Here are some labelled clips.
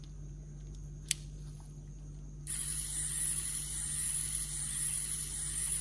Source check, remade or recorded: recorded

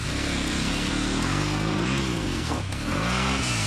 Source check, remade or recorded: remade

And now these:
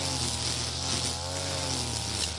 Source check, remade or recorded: recorded